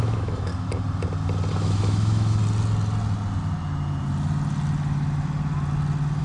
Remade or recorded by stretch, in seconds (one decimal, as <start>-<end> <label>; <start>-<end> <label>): 0.0-0.5 remade; 0.5-1.5 recorded; 1.5-2.4 remade; 2.4-6.2 recorded